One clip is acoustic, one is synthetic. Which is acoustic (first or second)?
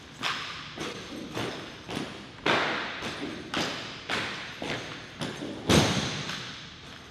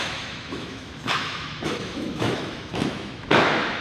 first